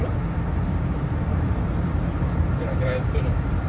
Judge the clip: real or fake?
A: fake